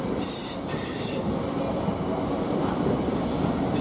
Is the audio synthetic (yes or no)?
no